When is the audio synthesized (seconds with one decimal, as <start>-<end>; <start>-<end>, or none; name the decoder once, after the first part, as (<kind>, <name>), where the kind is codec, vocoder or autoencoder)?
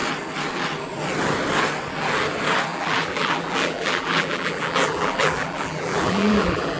2.7-6.8 (vocoder, BigVGAN v2)